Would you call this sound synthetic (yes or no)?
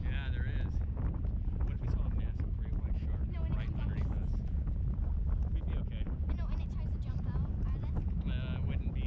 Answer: no